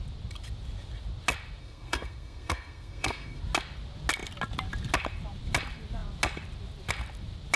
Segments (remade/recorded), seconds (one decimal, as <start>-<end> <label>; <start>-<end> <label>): 0.0-1.6 recorded; 1.6-3.4 remade; 3.4-7.6 recorded